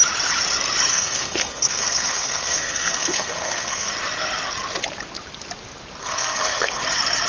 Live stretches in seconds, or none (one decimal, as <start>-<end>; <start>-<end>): 0.0-0.9; 3.9-6.0; 6.8-7.3